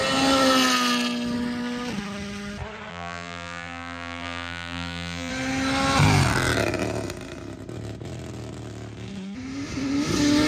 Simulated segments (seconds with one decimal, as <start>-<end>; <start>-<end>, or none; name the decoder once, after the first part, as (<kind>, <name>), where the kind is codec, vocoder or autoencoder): 2.9-5.3 (vocoder, BigVGAN v2)